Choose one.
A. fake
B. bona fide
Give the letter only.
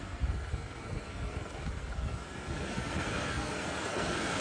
A